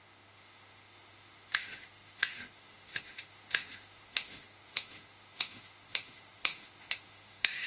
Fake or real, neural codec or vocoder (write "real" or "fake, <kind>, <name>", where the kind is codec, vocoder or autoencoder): fake, autoencoder, DAC-VAE